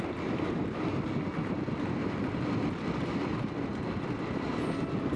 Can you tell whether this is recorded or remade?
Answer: recorded